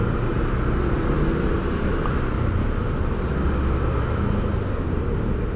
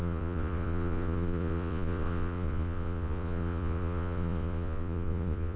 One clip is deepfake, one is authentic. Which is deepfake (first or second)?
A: second